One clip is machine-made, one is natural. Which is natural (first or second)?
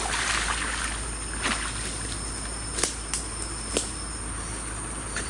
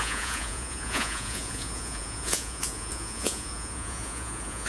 first